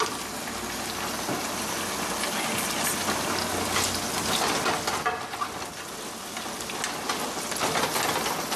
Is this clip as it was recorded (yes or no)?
yes